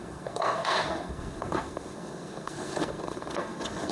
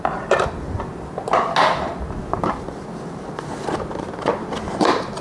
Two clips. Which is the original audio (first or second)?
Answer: second